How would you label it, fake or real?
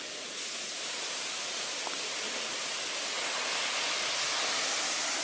real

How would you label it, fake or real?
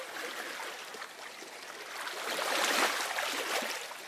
real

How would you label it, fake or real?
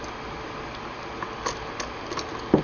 real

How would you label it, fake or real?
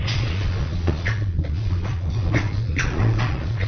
fake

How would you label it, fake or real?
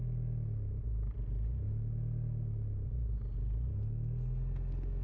real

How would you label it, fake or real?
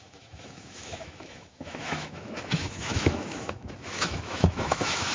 fake